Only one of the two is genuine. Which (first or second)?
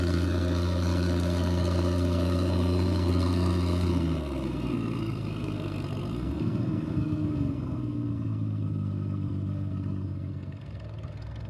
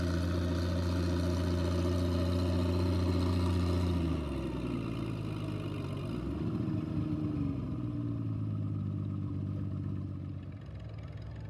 second